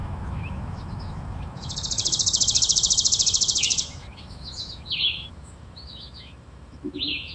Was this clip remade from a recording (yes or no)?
yes